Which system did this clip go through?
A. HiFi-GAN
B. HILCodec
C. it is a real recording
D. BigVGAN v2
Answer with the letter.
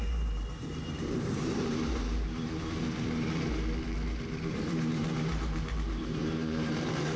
D